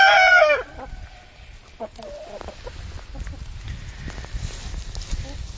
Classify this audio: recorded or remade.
recorded